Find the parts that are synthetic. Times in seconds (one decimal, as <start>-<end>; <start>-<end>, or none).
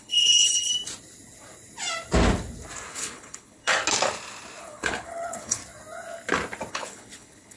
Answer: 0.0-0.7; 2.9-3.7; 4.6-5.6; 6.7-7.6